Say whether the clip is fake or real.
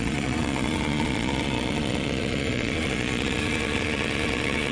fake